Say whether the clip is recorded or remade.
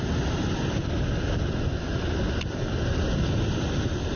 recorded